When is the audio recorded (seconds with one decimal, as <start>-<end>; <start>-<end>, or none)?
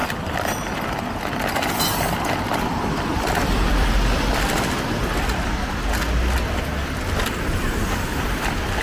0.0-1.3; 5.8-7.6